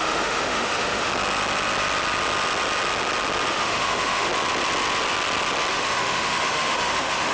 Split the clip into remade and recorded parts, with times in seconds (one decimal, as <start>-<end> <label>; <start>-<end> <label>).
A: 0.0-1.1 remade; 1.1-3.5 recorded; 3.5-4.3 remade; 4.3-5.7 recorded; 5.7-7.3 remade